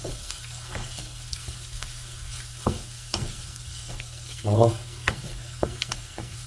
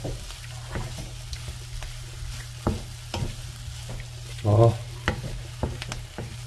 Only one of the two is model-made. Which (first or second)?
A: first